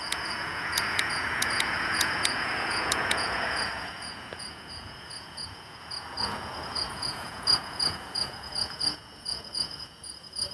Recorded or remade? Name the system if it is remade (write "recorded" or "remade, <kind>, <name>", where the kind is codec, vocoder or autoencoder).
remade, vocoder, Vocos